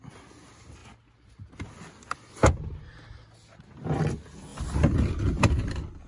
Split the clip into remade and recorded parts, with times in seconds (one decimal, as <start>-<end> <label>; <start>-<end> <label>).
0.0-6.1 recorded